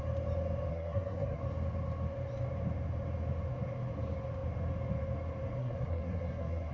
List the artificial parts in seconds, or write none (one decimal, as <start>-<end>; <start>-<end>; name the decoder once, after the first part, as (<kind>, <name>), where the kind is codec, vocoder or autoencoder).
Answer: 0.7-1.4 (codec, SNAC); 5.6-6.7